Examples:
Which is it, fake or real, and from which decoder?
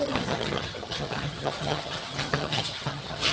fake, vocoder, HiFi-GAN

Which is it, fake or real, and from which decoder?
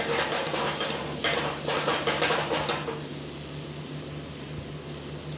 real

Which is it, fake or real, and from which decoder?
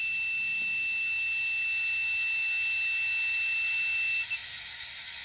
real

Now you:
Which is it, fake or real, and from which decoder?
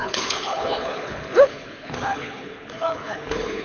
fake, codec, HILCodec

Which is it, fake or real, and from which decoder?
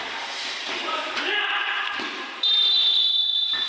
fake, vocoder, BigVGAN v2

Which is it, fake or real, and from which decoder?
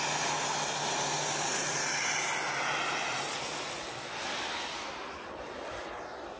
real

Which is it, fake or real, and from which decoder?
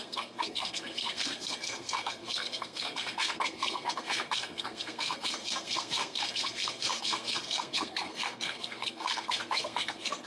fake, codec, SNAC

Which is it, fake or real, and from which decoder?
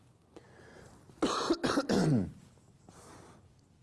real